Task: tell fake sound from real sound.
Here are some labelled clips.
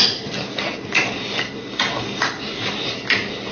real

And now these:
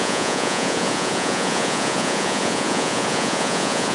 fake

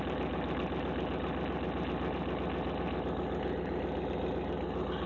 real